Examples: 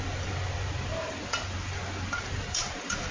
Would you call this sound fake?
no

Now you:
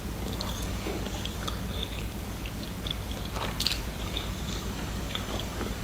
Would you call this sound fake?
yes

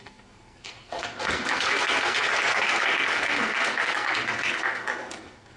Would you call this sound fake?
yes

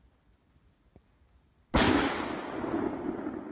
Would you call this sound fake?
no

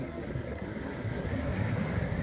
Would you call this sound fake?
yes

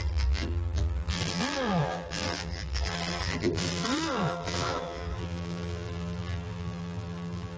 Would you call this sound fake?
yes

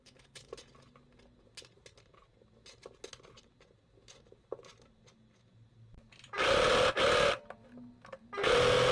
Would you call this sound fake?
no